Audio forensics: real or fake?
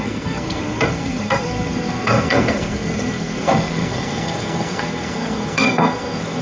fake